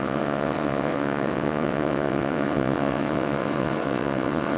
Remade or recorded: remade